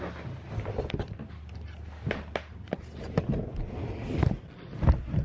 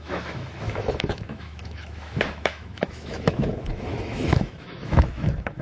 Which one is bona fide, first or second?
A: first